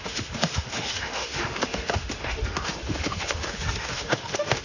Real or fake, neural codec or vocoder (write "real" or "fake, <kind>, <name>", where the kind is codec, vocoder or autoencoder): fake, autoencoder, DAC-VAE